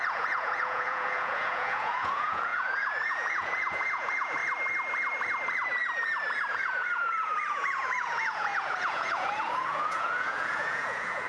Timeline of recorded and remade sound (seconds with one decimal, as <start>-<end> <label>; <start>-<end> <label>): 0.0-4.4 remade; 4.4-6.5 recorded; 6.5-11.3 remade